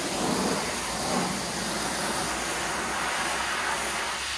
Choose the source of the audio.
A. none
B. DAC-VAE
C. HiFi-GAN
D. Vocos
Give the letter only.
A